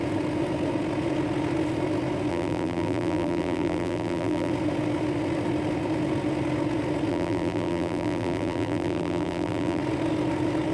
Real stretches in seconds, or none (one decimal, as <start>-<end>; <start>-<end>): 0.0-2.3; 4.5-7.1; 9.8-10.7